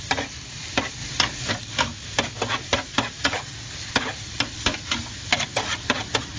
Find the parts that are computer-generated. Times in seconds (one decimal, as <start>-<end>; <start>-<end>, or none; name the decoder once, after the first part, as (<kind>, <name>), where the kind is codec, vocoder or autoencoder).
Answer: 0.0-1.0 (vocoder, BigVGAN v2); 1.5-1.9; 4.5-6.4